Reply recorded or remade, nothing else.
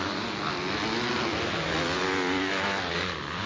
recorded